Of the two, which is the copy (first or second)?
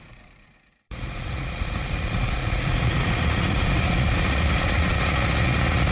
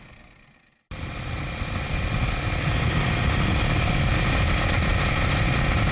first